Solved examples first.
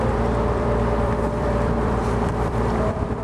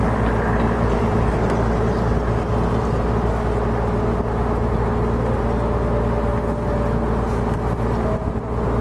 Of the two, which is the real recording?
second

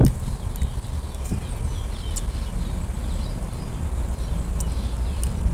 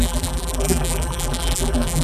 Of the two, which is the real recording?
first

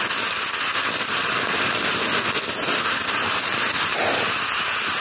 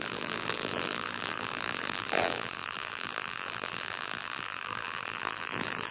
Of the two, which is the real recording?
first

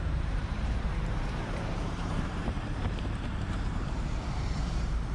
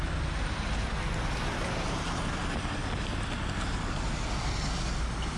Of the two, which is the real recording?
second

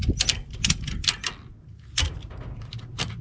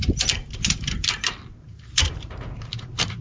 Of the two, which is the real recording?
first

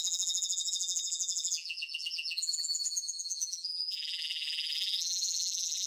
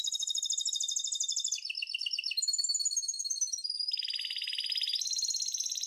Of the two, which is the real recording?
second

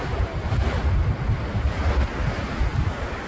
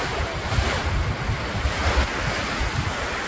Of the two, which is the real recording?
first